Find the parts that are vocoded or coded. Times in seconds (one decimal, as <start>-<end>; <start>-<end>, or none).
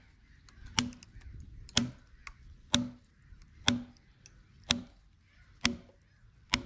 none